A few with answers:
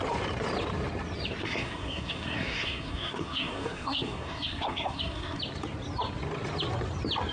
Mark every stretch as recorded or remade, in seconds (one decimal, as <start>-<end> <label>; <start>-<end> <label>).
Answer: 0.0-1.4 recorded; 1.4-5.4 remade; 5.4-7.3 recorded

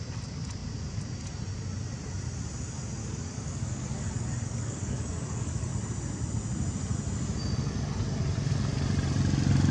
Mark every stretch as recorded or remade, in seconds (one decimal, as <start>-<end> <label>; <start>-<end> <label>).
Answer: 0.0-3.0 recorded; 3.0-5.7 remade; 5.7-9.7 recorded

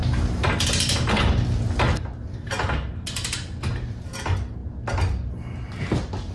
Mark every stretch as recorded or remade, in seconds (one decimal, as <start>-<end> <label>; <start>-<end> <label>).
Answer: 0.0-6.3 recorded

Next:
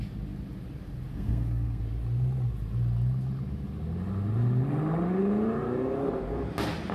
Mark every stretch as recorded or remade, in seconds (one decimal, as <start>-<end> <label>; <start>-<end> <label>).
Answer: 0.0-1.1 recorded; 1.1-1.8 remade; 1.8-6.9 recorded

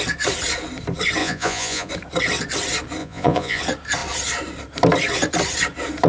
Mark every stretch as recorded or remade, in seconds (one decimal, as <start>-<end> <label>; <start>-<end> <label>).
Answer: 0.0-1.2 recorded; 1.2-1.9 remade; 1.9-3.0 recorded; 3.0-3.6 remade; 3.6-6.1 recorded

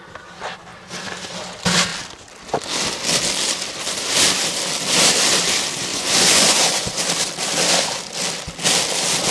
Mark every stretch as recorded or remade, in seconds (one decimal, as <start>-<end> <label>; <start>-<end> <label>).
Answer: 0.0-5.9 recorded; 5.9-7.0 remade; 7.0-9.3 recorded